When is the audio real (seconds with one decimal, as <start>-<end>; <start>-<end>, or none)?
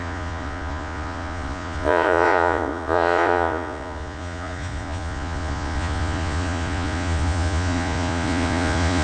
none